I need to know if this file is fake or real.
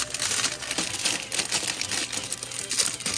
real